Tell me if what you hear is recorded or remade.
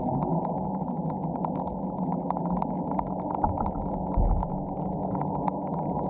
recorded